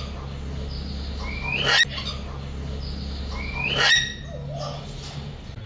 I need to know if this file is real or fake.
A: real